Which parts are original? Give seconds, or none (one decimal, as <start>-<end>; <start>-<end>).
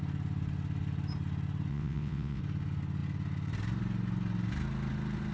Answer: 0.0-1.7; 2.4-5.3